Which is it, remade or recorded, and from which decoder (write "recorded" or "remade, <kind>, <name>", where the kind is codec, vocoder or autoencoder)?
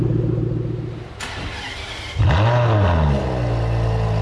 recorded